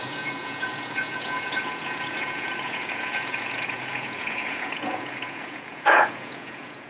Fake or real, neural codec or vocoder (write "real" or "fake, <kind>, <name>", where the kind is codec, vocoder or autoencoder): fake, vocoder, Vocos